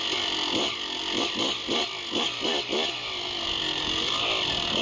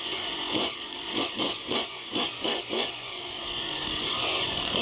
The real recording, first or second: first